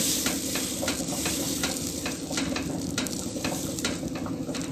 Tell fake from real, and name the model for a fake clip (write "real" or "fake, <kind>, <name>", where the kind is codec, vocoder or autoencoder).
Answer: fake, vocoder, BigVGAN v2